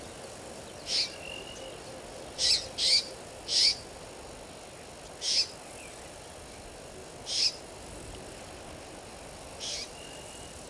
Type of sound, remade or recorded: recorded